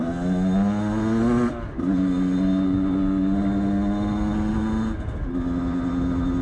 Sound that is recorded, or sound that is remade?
recorded